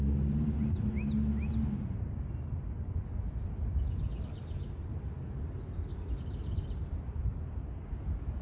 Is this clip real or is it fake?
real